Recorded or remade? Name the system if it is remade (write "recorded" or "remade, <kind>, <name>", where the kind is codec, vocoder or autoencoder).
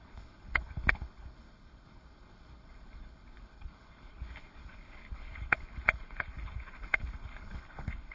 remade, codec, HILCodec